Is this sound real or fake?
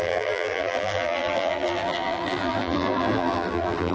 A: fake